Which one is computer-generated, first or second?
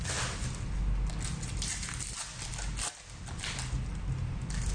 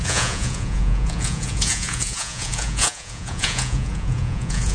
second